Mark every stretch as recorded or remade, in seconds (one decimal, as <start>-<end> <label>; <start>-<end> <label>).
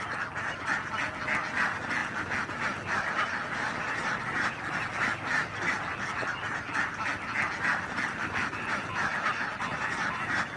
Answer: 0.0-10.6 recorded